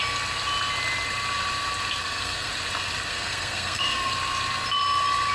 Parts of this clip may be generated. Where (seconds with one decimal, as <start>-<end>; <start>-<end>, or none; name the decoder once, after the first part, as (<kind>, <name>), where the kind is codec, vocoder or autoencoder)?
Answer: 2.0-2.5 (codec, SNAC); 3.1-4.1